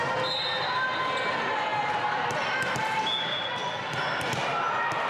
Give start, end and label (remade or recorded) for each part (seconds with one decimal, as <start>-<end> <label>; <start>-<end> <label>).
0.0-5.1 recorded